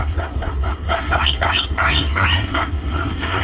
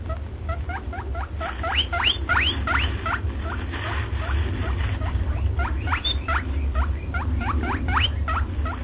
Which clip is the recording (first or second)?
second